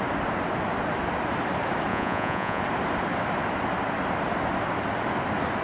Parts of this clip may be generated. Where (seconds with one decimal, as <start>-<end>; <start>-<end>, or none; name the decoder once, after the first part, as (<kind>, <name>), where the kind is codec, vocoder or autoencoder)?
1.9-2.6 (vocoder, Vocos)